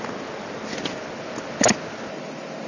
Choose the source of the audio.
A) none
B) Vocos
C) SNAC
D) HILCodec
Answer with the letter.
A